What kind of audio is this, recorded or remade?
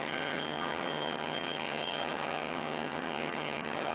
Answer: remade